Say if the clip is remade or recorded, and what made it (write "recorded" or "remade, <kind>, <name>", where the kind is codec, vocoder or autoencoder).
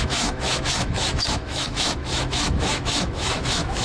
remade, autoencoder, DAC-VAE